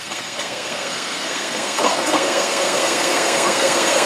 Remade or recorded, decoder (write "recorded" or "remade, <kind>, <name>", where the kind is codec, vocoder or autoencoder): remade, codec, SNAC